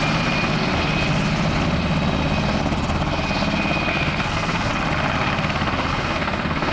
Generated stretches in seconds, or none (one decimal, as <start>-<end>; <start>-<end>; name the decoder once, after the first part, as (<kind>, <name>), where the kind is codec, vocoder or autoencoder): 3.9-4.7 (codec, SNAC); 5.9-6.7